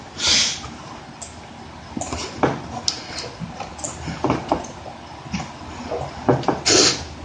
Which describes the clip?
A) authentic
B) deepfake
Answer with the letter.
A